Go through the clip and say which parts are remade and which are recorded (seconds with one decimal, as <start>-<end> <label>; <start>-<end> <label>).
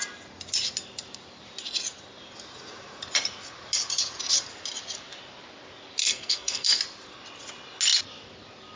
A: 0.0-6.0 recorded; 6.0-6.8 remade; 6.8-8.8 recorded